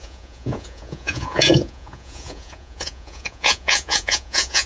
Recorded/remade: remade